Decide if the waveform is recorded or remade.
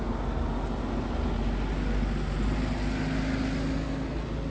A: recorded